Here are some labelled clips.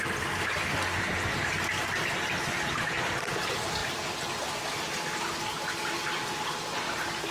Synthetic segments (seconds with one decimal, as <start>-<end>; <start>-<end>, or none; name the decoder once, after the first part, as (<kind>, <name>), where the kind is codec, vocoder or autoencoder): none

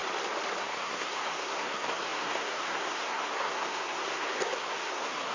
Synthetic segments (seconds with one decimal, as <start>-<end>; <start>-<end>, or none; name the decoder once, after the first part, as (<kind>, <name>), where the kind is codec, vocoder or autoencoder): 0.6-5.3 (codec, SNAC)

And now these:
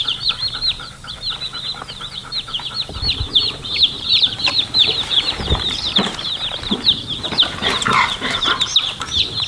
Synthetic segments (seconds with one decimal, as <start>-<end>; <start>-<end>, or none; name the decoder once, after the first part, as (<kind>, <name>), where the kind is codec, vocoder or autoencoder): 0.0-9.5 (vocoder, BigVGAN v2)

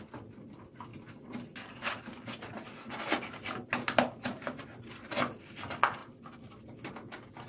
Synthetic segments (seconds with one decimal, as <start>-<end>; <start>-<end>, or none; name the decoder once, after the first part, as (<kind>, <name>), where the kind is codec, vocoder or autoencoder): none

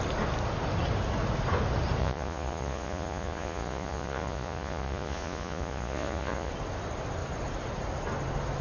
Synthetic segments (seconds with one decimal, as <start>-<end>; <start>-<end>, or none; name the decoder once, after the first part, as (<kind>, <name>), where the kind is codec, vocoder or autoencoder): 2.0-6.5 (vocoder, Vocos)